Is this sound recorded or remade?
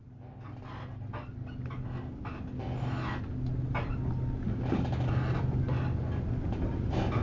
recorded